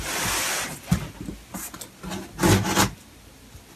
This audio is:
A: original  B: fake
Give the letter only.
A